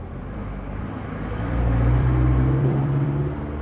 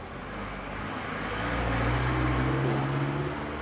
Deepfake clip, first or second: first